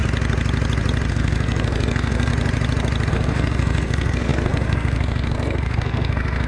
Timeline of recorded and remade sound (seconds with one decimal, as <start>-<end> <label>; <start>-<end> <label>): 0.0-1.1 recorded; 1.1-2.3 remade; 2.3-3.1 recorded; 3.1-6.5 remade